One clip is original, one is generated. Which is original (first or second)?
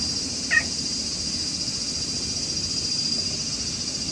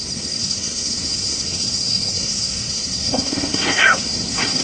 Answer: first